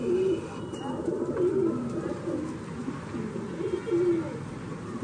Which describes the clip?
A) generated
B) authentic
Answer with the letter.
B